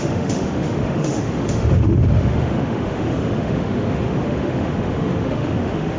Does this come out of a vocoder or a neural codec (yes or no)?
yes